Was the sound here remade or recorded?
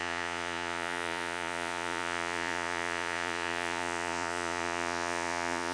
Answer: remade